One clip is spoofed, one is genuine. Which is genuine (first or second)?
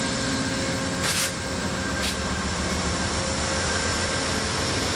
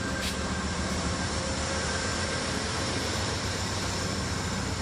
first